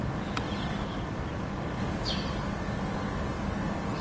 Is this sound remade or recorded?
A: recorded